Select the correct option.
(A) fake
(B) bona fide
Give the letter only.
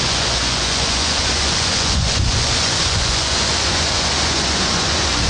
A